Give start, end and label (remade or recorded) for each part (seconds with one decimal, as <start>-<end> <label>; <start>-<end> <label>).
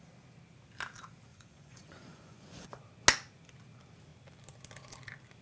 0.0-1.3 recorded; 1.3-2.8 remade; 2.8-5.4 recorded